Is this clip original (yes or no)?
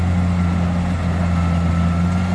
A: yes